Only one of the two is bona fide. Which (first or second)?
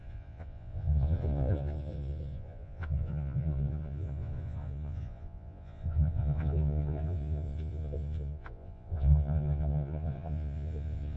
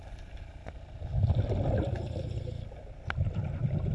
second